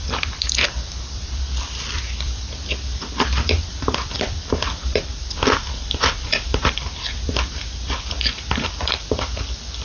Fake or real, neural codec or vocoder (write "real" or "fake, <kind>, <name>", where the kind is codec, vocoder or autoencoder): fake, vocoder, BigVGAN v2